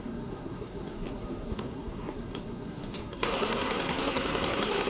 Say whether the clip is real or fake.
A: fake